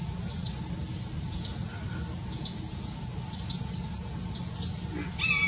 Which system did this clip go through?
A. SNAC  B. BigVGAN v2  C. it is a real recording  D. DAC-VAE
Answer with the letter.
C